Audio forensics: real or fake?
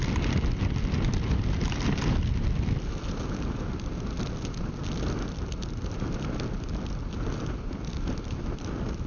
real